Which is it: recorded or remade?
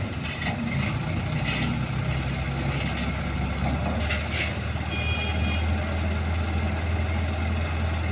recorded